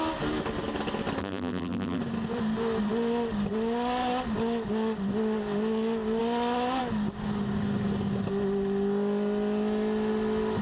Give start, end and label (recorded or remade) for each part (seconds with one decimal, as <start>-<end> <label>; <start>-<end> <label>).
0.0-1.2 recorded; 1.2-2.0 remade; 2.0-10.6 recorded